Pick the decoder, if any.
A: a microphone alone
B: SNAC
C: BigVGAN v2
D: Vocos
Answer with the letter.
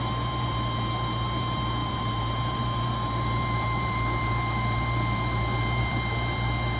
C